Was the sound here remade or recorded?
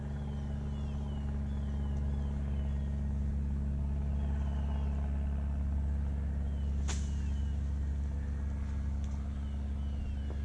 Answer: recorded